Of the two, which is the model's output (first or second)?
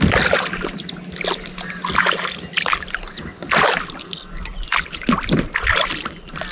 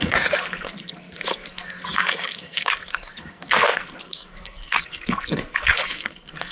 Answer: second